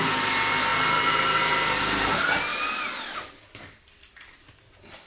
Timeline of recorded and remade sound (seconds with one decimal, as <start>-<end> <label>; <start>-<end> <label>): 0.0-5.1 recorded